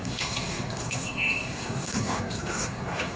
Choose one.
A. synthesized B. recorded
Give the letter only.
A